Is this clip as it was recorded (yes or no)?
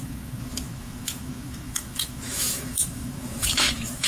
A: no